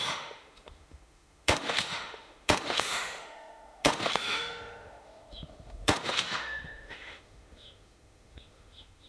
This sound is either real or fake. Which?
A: fake